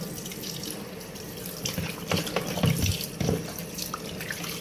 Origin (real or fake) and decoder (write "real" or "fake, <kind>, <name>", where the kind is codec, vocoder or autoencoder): real